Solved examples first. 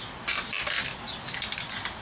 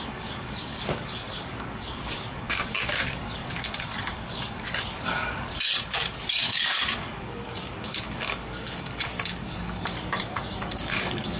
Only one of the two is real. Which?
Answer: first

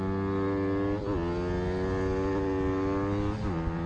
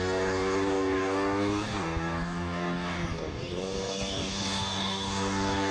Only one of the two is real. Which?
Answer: first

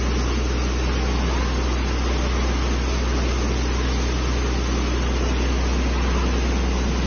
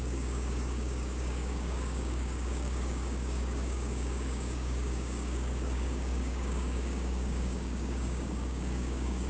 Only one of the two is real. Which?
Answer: first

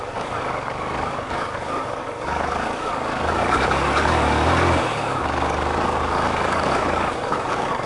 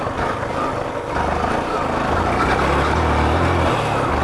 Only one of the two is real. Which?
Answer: second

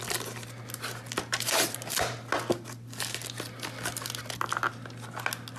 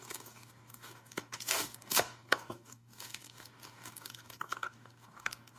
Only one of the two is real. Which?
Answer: first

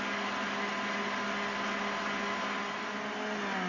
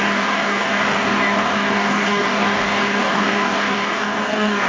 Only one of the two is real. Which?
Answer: first